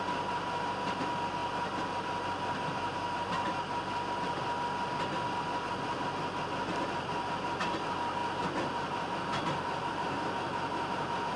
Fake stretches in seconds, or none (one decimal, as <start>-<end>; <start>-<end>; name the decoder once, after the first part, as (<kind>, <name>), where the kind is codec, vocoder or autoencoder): none